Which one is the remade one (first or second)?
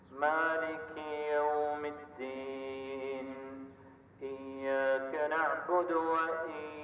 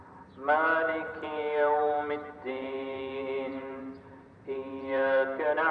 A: second